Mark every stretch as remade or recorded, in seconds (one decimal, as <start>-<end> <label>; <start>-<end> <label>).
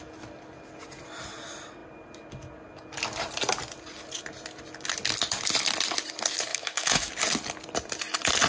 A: 0.0-6.5 recorded; 6.5-7.1 remade; 7.1-8.5 recorded